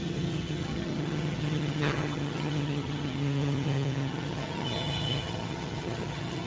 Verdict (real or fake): fake